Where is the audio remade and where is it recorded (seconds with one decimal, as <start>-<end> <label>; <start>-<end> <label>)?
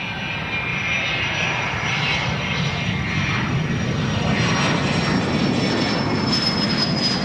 0.0-0.7 recorded; 0.7-2.6 remade; 2.6-7.2 recorded